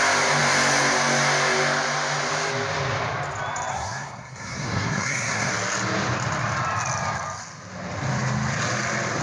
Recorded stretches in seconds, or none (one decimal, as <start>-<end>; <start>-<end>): 0.0-3.7; 5.5-9.2